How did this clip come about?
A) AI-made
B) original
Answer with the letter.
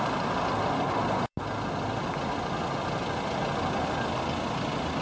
B